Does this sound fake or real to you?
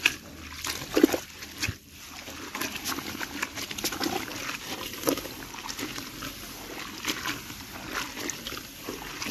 real